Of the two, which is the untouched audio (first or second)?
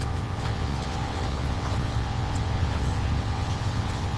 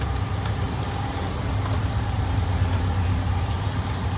second